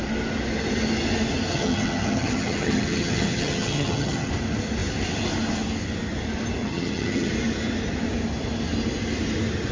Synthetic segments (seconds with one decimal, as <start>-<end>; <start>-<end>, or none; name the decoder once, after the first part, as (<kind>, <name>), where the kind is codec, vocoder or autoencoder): 1.5-4.3 (vocoder, HiFi-GAN); 6.6-7.3